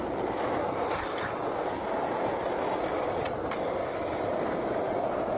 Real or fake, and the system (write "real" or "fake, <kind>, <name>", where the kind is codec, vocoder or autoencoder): real